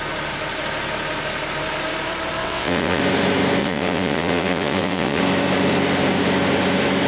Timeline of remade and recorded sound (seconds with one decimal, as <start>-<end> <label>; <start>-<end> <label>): 0.0-2.4 recorded; 2.4-3.0 remade; 3.0-3.6 recorded; 3.6-5.2 remade; 5.2-7.1 recorded